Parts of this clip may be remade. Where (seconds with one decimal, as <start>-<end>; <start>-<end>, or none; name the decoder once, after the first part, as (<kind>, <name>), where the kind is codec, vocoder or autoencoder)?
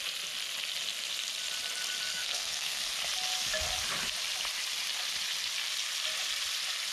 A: 2.1-2.8 (codec, SNAC)